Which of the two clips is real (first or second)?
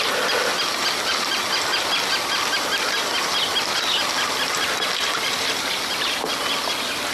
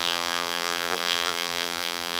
first